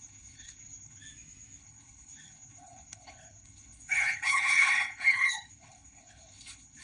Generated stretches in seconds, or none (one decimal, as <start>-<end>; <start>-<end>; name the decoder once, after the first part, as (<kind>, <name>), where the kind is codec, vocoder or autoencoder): 0.0-1.0 (codec, HILCodec); 1.6-6.8